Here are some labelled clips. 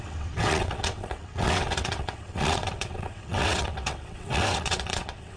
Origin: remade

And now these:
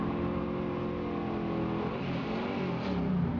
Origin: recorded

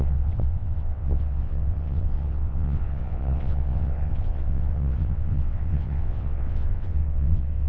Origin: remade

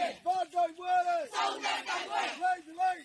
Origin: recorded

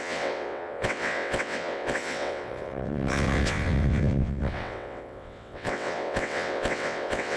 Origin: remade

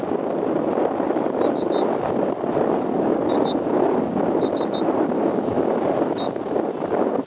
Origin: recorded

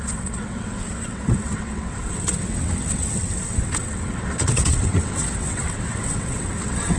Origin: remade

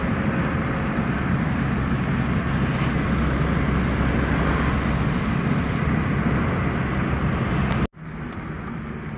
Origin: recorded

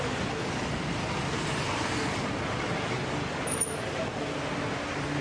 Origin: recorded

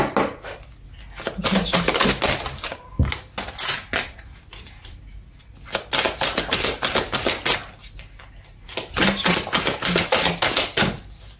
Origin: recorded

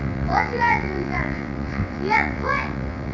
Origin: remade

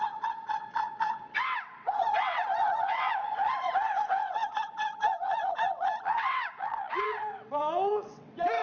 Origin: remade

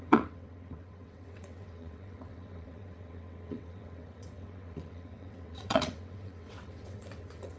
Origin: remade